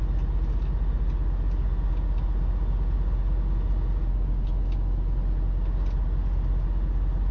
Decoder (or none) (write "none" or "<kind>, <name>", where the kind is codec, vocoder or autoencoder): none